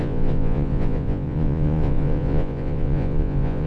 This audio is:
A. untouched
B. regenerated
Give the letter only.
B